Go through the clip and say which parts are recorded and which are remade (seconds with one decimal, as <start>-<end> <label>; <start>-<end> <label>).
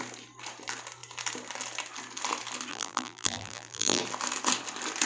0.0-2.7 recorded; 2.7-4.0 remade; 4.0-5.1 recorded